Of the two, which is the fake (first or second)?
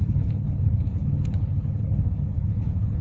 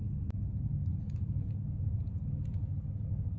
first